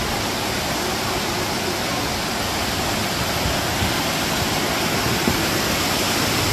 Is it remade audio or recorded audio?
recorded